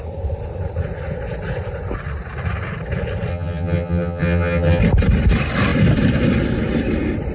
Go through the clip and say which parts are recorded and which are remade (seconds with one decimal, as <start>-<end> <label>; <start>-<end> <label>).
0.0-3.3 recorded; 3.3-4.8 remade; 4.8-7.3 recorded